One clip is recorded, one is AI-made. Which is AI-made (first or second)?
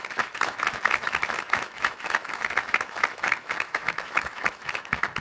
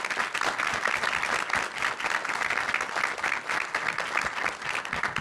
first